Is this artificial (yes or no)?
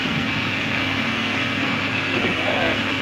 yes